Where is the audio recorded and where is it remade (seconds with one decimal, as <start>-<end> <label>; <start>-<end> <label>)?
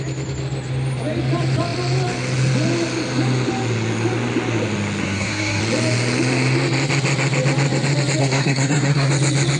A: 0.0-5.0 recorded; 5.0-5.6 remade; 5.6-8.2 recorded; 8.2-9.1 remade; 9.1-9.6 recorded